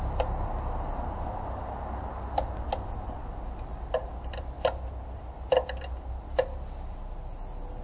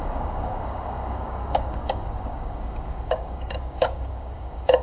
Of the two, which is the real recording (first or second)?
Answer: first